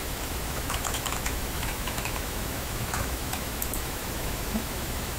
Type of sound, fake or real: fake